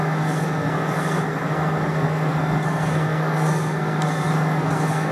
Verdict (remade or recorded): remade